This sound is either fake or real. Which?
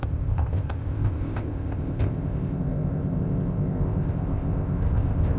fake